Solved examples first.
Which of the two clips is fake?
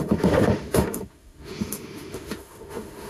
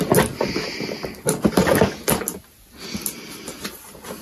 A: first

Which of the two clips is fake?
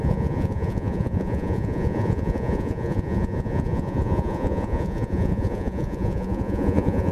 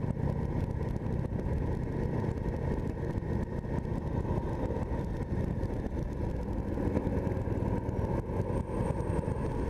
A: first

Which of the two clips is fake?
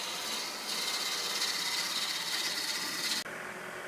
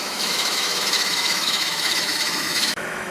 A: second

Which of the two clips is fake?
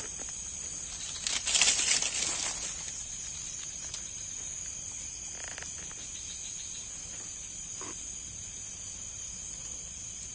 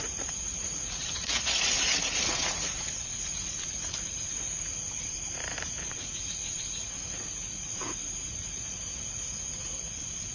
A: second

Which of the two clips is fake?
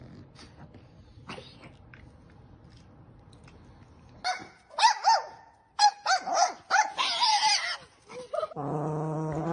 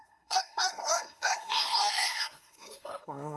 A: second